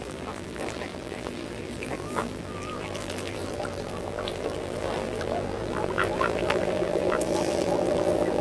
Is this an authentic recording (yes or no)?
no